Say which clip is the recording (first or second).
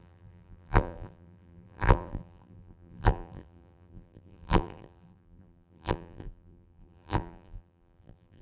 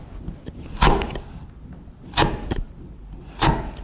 second